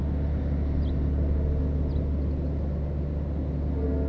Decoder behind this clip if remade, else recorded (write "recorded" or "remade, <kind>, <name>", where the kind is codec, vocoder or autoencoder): recorded